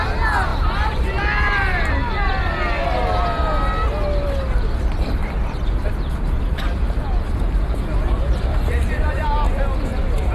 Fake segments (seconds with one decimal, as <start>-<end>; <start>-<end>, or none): none